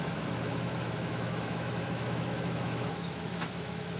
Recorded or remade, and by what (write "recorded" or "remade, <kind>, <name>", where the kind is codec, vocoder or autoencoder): remade, autoencoder, DAC-VAE